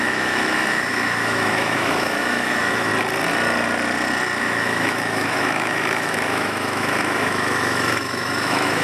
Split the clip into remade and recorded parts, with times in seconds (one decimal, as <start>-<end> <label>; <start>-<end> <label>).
0.0-2.9 remade; 2.9-4.4 recorded; 4.4-8.8 remade